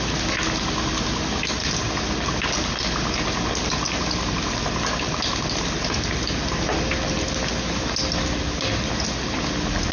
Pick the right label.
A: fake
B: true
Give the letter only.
B